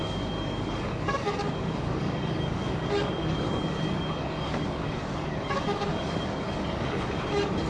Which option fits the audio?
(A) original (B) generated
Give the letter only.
B